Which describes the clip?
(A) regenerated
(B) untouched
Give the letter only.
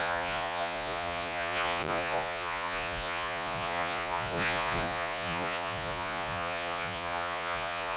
A